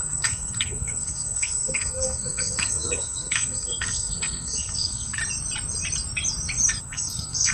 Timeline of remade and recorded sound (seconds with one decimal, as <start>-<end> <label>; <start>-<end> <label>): 0.0-5.2 remade; 5.2-6.8 recorded; 6.8-7.5 remade